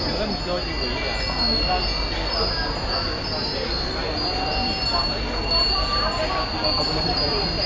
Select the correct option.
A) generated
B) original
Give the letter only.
B